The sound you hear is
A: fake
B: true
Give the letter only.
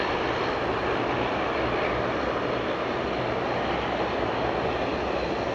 B